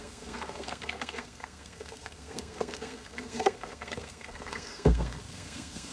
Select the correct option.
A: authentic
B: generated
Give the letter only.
B